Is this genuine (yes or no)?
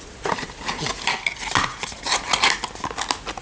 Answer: yes